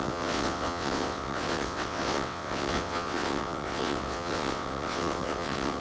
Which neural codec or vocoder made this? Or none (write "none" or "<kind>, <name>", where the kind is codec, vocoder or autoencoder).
vocoder, WaveNeXt